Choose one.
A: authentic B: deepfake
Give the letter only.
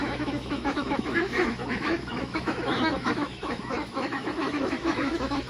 B